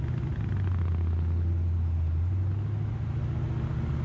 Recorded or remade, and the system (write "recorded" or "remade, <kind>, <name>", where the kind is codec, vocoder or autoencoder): recorded